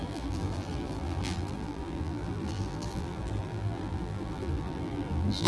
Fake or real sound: fake